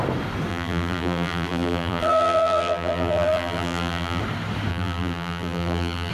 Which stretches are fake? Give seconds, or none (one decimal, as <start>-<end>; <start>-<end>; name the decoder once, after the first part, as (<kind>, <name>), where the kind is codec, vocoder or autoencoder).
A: 0.5-4.2 (vocoder, BigVGAN v2); 4.7-6.1